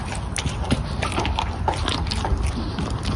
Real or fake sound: real